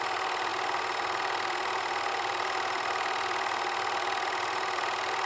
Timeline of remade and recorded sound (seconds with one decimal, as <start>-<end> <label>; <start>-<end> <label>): 0.0-5.3 recorded